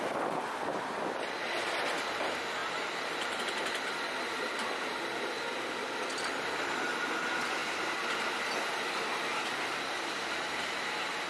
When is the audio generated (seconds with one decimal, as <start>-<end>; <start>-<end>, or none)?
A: 2.6-3.4